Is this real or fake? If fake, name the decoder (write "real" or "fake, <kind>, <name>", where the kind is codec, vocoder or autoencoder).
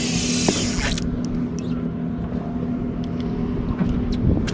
real